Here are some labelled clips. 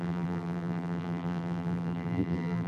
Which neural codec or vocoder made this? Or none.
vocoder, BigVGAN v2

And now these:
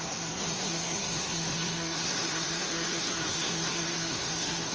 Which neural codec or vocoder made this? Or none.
codec, SNAC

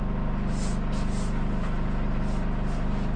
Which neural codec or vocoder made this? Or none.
none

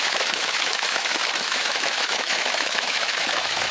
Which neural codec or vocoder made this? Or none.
autoencoder, DAC-VAE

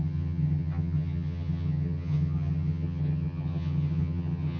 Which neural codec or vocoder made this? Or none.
vocoder, HiFi-GAN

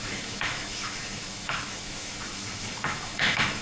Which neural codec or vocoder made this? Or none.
autoencoder, DAC-VAE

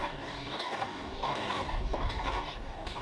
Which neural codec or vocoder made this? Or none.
codec, DAC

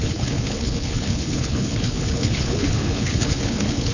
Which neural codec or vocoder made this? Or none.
codec, HILCodec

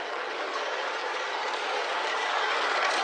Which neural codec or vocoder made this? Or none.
codec, DAC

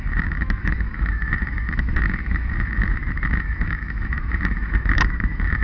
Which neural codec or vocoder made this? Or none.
autoencoder, DAC-VAE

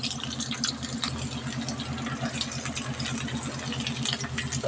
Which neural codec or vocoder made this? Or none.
none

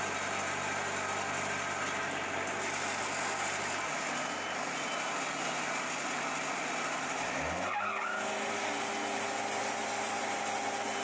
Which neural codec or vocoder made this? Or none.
none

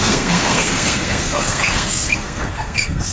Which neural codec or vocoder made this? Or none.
codec, SNAC